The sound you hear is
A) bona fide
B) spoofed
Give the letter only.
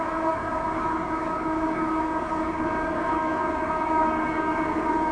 B